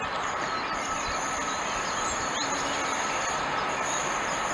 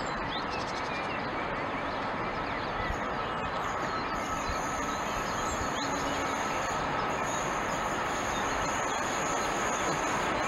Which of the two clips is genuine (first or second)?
second